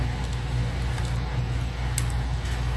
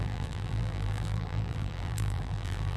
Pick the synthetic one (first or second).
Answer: second